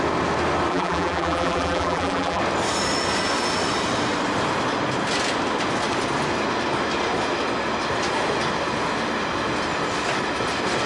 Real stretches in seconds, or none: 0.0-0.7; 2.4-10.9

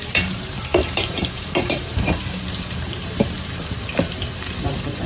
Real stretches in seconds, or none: none